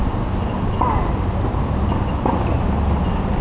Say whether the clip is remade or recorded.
recorded